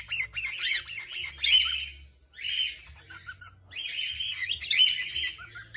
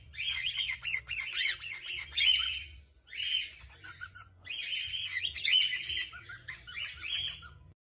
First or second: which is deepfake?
second